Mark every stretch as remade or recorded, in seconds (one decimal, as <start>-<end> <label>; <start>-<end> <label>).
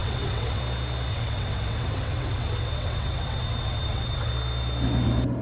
0.0-0.6 remade; 0.6-1.1 recorded; 1.1-4.3 remade; 4.3-5.4 recorded